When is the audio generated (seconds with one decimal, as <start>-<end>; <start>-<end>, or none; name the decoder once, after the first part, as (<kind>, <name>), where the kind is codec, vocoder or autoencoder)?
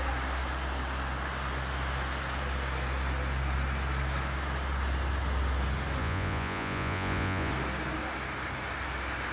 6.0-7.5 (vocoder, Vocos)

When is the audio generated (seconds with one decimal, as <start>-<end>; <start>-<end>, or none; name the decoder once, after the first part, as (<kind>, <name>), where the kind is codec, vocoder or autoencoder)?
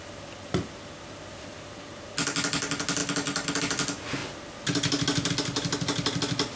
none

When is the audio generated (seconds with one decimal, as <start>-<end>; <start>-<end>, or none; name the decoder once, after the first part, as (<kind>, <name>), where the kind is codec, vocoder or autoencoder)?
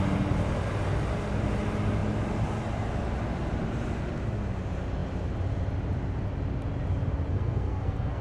7.3-8.2 (codec, SNAC)